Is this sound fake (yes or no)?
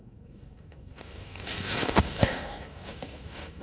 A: yes